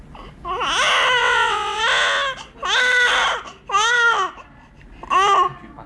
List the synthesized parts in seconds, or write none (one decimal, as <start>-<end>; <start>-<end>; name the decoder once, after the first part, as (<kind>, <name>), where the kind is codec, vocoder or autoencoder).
1.2-1.8 (vocoder, WaveNeXt)